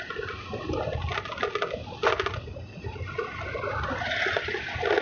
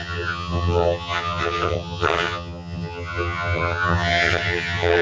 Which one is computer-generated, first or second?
second